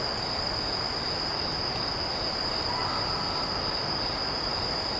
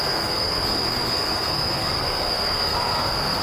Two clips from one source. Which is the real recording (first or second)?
first